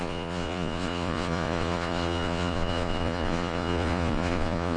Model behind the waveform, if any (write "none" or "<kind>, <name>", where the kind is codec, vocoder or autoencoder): vocoder, Vocos